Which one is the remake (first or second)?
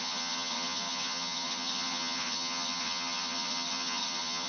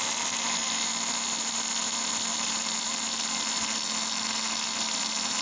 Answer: first